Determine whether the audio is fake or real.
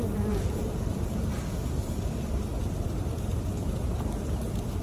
fake